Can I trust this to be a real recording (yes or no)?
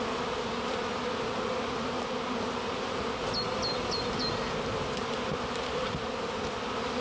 yes